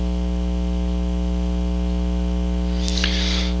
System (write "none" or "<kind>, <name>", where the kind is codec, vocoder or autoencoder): none